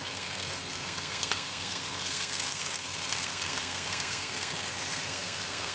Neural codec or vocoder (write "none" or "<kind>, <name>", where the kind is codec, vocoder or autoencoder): codec, SNAC